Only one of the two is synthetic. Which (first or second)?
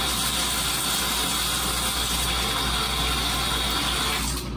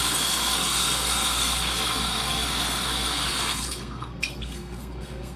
second